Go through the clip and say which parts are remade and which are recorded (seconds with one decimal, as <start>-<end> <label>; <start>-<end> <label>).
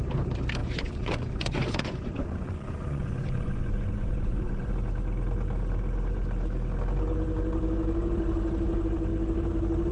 0.0-0.6 recorded; 0.6-4.7 remade; 4.7-9.9 recorded